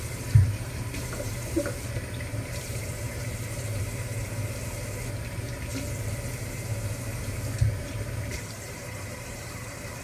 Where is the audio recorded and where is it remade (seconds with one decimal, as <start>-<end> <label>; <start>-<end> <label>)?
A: 0.0-5.7 remade; 5.7-6.4 recorded; 6.4-10.0 remade